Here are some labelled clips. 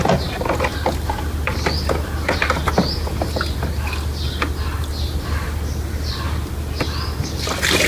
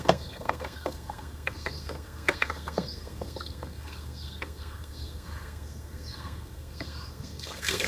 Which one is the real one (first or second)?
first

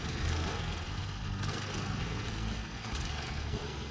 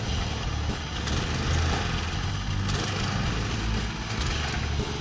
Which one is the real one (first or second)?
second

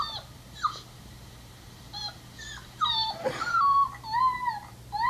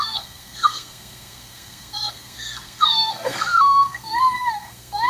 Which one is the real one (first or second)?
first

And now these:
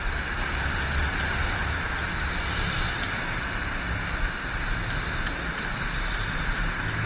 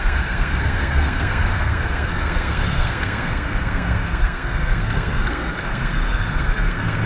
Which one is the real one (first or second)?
first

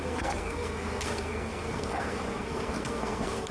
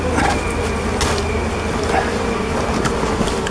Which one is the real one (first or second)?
second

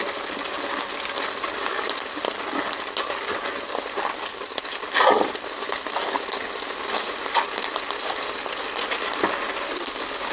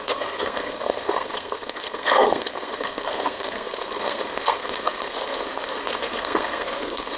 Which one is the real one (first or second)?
first